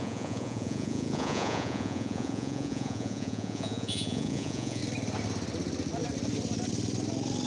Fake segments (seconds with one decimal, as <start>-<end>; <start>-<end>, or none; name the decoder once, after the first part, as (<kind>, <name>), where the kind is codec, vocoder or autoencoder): 0.0-4.8 (vocoder, Vocos)

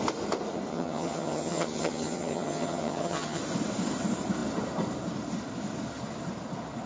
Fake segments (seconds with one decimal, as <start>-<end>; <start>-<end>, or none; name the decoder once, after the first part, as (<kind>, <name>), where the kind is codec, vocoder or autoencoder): 0.7-3.4 (vocoder, HiFi-GAN)

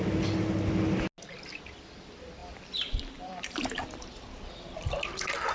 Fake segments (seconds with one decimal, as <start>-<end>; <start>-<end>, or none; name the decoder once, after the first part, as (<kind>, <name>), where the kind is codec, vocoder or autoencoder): 2.4-4.1 (vocoder, BigVGAN v2)

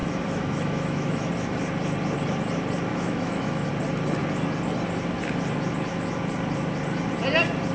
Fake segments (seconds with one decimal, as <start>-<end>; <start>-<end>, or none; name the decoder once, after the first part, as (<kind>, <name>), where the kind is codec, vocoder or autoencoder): 0.0-1.3 (autoencoder, DAC-VAE); 2.9-3.7